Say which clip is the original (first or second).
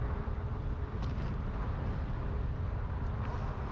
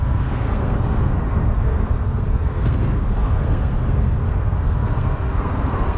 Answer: first